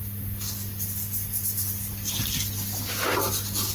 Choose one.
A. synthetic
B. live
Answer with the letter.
B